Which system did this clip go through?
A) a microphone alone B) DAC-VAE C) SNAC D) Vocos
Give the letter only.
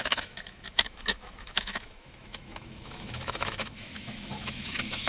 B